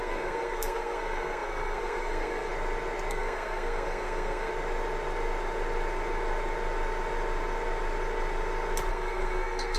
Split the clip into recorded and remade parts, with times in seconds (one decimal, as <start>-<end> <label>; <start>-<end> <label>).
0.0-2.5 remade; 2.5-3.1 recorded; 3.1-4.5 remade; 4.5-8.9 recorded; 8.9-9.8 remade